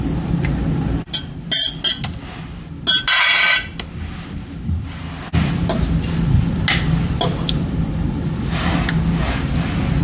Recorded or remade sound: recorded